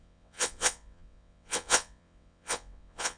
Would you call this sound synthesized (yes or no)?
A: yes